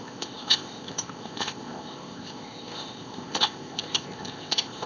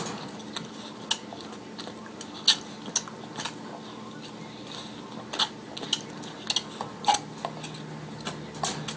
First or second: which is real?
second